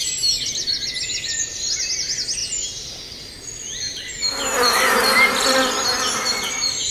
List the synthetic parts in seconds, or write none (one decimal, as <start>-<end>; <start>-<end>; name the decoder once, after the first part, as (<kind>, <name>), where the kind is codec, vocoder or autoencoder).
none